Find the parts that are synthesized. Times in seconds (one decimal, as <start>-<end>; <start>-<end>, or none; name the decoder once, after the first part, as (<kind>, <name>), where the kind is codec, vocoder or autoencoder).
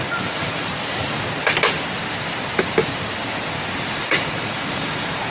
0.0-0.7 (vocoder, Vocos); 3.9-5.3